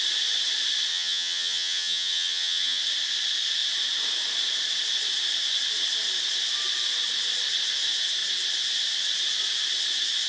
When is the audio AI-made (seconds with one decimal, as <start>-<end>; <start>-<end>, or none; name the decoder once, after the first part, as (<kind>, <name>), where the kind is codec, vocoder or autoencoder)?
0.9-2.8 (vocoder, HiFi-GAN)